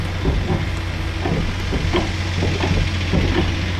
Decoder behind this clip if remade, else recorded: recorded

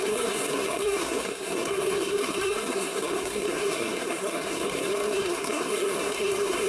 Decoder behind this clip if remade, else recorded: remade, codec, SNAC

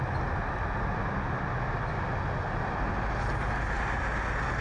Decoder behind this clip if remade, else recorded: recorded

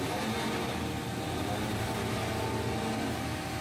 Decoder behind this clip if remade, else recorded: recorded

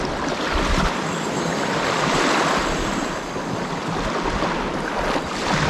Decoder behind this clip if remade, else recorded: recorded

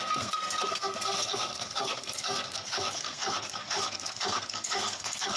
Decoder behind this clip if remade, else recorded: remade, codec, SNAC